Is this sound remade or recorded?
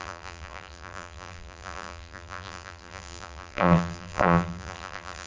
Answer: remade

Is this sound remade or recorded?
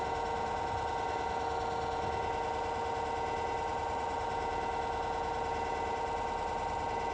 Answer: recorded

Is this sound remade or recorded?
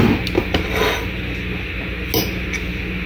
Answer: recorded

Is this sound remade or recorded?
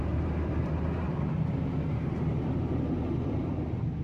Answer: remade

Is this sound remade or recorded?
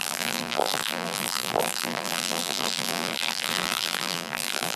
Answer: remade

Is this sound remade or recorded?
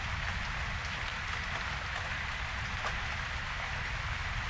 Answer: recorded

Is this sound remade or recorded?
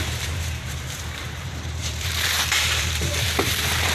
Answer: remade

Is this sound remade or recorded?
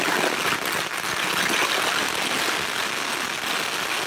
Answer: recorded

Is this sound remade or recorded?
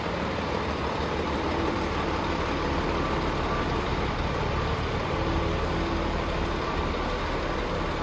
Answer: remade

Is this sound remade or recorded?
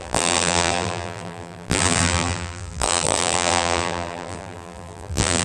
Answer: remade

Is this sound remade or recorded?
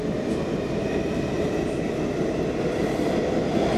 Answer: recorded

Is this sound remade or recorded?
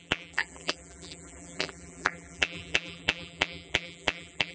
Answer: remade